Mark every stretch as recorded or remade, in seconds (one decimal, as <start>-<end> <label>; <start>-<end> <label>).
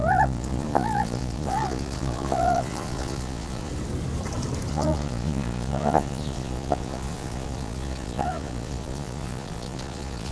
0.0-3.7 remade; 3.7-4.7 recorded; 4.7-10.3 remade